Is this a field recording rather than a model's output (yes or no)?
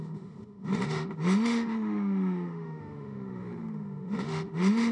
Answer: no